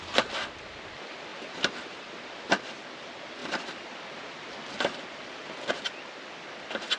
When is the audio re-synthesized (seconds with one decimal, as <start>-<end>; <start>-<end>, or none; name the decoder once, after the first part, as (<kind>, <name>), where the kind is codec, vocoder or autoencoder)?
1.3-2.5 (vocoder, BigVGAN v2)